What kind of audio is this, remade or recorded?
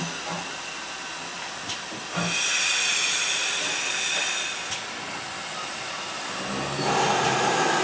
recorded